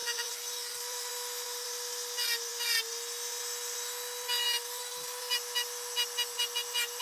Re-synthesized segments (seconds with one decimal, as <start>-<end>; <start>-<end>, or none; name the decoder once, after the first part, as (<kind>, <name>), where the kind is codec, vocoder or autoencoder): 0.0-1.1 (vocoder, BigVGAN v2)